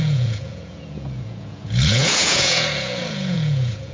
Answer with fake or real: fake